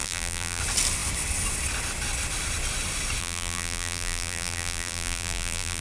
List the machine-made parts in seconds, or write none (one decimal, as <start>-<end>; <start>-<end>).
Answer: 0.0-0.6; 3.2-5.8